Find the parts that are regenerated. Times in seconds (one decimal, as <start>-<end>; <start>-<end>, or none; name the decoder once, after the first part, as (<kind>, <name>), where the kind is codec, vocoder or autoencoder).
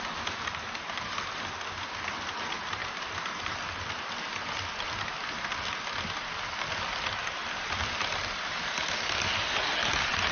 none